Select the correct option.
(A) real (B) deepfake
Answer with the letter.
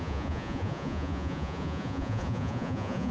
B